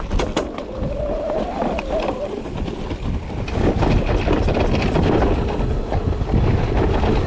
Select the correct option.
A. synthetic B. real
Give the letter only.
B